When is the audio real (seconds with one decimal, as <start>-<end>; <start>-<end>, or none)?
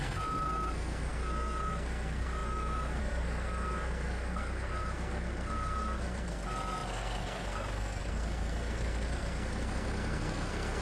none